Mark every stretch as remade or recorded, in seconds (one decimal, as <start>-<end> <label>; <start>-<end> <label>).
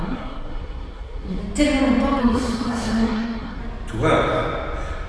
0.0-1.4 remade; 1.4-2.2 recorded; 2.2-3.6 remade; 3.6-5.1 recorded